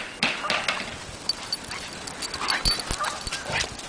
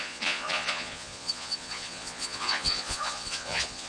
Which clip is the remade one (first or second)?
second